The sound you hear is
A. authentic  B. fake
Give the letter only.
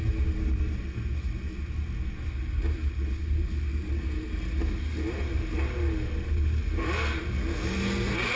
A